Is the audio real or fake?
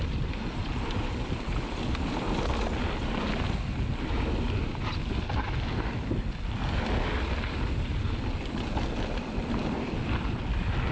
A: real